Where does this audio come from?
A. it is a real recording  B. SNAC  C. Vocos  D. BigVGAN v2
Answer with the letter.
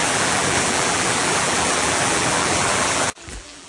D